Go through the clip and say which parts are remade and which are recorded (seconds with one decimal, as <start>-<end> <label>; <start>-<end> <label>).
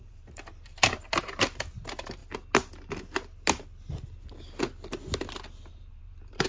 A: 0.0-2.2 remade; 2.2-5.7 recorded; 5.7-6.5 remade